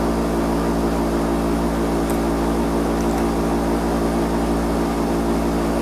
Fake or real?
real